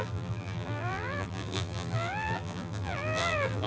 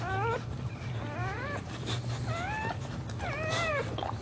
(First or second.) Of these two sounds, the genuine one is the second